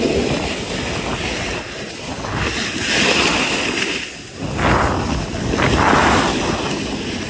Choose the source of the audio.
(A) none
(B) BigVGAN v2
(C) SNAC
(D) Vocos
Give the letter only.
A